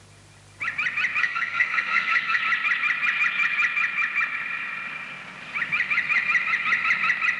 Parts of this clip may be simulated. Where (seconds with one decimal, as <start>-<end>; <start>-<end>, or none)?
1.2-2.4